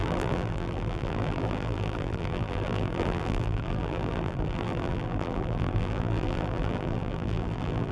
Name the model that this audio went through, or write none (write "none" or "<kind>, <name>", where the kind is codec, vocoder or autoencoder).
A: vocoder, BigVGAN v2